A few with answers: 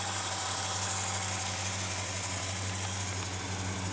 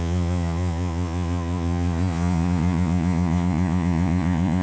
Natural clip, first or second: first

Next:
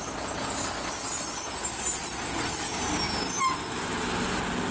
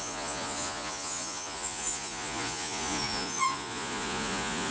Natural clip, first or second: first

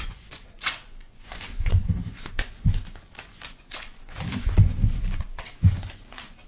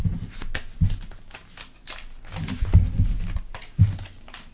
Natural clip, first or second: second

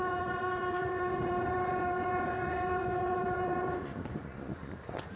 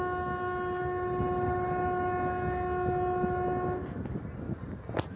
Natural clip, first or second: second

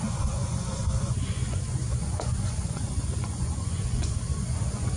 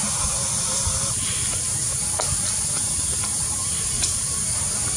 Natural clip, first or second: second